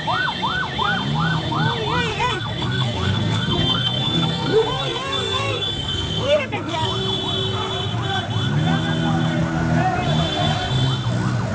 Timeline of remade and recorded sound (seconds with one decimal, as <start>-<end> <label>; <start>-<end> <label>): 0.0-2.1 recorded; 2.1-6.9 remade; 6.9-11.5 recorded